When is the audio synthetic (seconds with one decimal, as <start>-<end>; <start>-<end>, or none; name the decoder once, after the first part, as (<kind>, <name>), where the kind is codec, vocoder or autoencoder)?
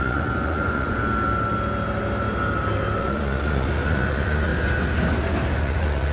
0.0-1.0 (vocoder, Vocos); 3.0-4.5; 5.6-6.1